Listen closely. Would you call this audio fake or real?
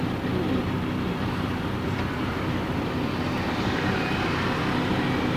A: real